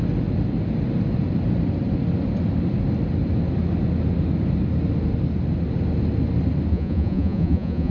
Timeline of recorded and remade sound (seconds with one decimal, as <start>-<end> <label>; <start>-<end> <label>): 0.0-6.7 recorded; 6.7-7.9 remade